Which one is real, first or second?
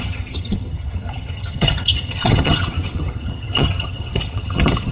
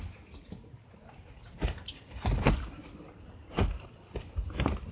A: second